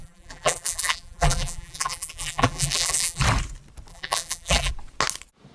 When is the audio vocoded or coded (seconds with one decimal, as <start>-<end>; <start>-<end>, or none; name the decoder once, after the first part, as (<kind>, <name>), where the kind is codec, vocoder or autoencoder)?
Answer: 0.0-3.2 (vocoder, BigVGAN v2); 3.9-4.7